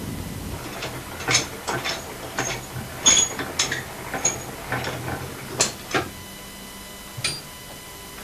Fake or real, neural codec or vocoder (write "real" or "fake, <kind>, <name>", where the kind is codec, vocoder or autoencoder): real